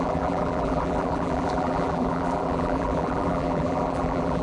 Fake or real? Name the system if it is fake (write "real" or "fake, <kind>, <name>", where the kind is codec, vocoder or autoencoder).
fake, vocoder, BigVGAN v2